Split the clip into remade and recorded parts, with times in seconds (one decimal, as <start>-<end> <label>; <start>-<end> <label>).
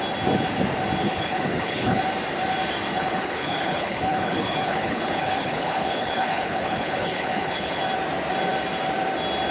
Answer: 0.0-1.0 recorded; 1.0-2.0 remade; 2.0-2.9 recorded; 2.9-7.8 remade; 7.8-9.5 recorded